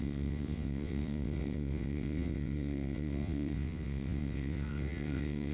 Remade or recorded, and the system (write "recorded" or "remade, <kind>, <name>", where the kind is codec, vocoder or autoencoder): remade, vocoder, WaveNeXt